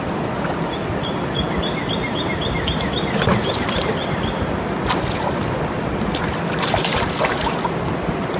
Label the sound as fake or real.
real